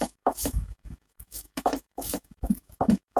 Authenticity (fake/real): fake